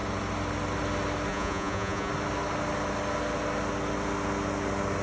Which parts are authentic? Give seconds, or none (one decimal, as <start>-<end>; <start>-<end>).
0.0-1.3; 2.1-5.0